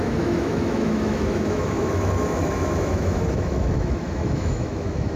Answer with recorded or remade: remade